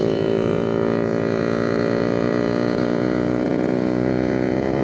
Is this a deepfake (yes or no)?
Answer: yes